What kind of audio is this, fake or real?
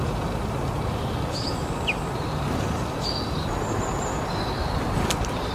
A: real